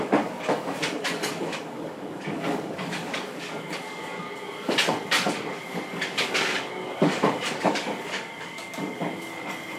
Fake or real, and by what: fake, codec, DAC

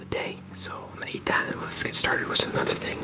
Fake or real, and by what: fake, codec, DAC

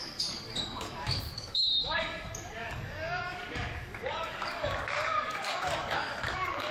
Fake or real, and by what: fake, codec, DAC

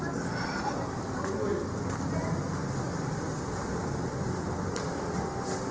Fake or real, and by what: real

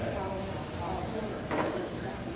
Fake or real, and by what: real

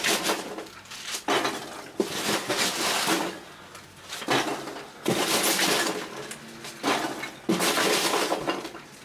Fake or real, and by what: real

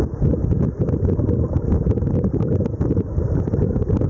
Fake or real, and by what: real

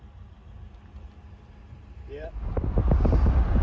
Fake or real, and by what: real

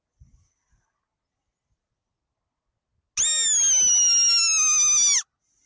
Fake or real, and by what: real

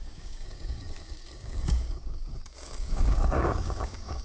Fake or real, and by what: fake, codec, DAC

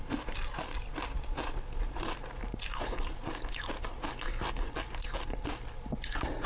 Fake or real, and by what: real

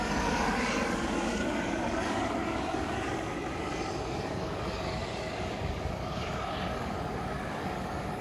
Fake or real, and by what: fake, codec, DAC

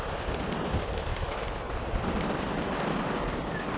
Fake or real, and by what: real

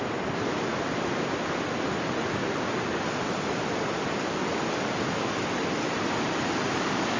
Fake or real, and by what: real